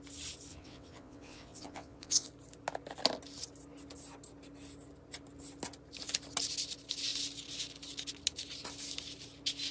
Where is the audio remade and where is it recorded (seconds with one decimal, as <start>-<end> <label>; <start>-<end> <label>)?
0.0-0.5 recorded; 0.5-2.3 remade; 2.3-9.7 recorded